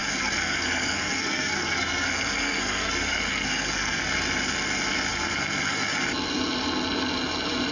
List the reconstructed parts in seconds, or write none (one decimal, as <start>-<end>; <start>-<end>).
0.0-4.0; 5.1-5.9